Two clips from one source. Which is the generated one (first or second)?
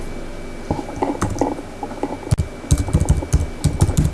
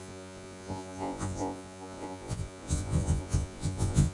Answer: second